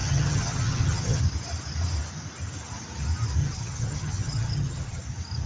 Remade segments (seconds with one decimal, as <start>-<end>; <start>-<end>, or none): 0.0-1.2; 3.4-5.0